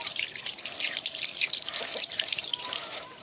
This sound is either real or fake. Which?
fake